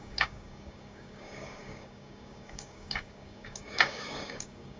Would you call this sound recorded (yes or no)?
no